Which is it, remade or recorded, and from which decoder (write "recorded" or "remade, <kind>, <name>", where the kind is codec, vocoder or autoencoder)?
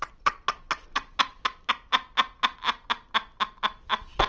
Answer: recorded